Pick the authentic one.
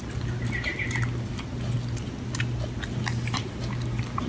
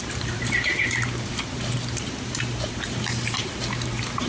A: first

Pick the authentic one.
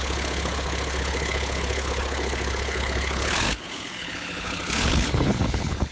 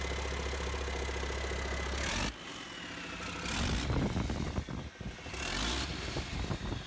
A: second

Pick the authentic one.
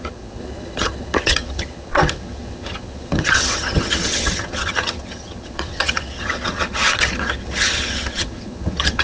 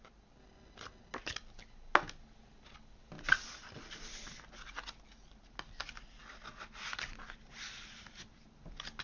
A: second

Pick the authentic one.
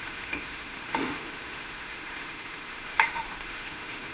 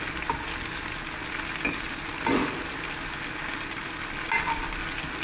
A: second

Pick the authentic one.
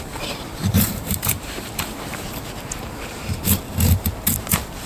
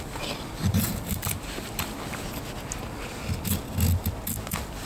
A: second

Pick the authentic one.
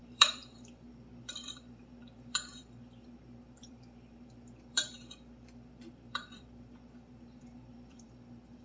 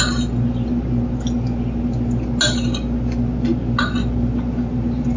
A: second